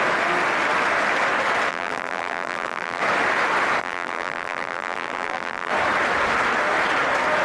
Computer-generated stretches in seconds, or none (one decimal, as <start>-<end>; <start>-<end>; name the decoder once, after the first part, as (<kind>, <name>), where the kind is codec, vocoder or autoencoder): 1.7-3.0 (vocoder, BigVGAN v2); 3.8-5.7